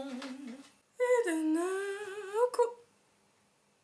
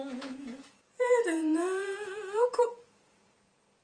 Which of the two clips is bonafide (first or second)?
first